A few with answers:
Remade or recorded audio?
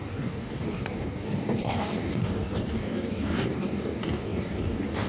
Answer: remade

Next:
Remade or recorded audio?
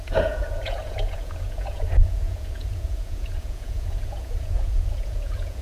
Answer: remade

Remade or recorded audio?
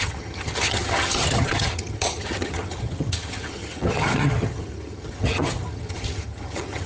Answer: remade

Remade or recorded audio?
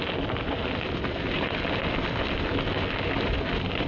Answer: recorded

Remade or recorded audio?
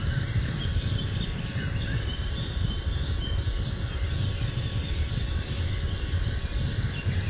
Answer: recorded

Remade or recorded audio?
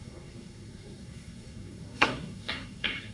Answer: remade